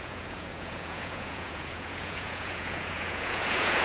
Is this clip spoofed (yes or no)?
yes